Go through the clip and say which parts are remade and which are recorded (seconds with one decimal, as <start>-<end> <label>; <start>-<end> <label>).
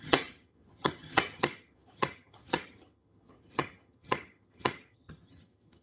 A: 0.0-5.8 remade